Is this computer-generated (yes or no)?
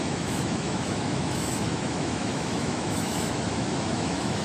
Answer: yes